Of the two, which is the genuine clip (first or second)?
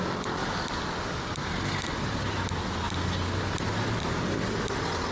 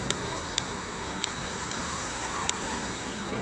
first